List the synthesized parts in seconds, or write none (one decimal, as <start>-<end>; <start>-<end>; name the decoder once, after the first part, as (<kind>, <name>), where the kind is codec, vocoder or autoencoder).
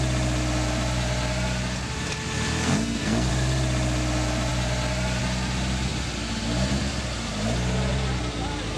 2.5-3.3 (codec, SNAC)